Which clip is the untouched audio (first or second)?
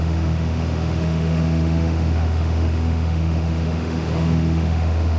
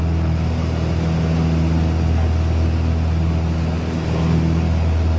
second